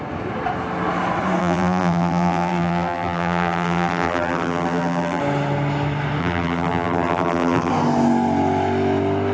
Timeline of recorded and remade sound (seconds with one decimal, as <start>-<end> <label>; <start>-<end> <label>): 0.0-1.4 recorded; 1.4-5.2 remade; 5.2-6.2 recorded; 6.2-7.7 remade; 7.7-9.3 recorded